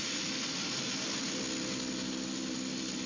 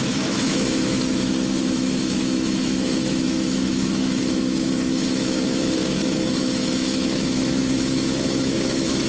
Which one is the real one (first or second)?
first